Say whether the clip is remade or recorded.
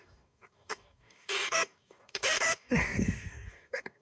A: remade